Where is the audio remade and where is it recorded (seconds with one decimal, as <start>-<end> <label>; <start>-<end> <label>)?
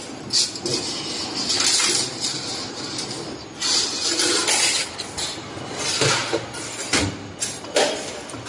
0.0-8.5 recorded